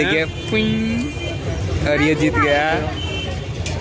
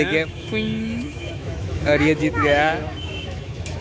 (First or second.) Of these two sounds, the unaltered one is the first